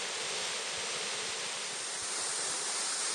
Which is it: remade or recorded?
recorded